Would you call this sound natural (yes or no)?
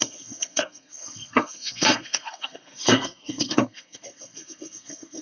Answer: no